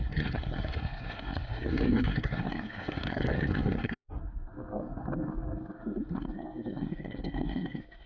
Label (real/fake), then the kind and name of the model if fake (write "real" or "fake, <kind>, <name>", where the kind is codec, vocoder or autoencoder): fake, codec, SNAC